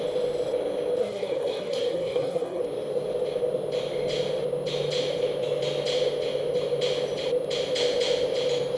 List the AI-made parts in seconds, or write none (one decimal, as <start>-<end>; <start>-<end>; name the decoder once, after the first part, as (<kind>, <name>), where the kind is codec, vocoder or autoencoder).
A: 1.0-2.6 (codec, SNAC)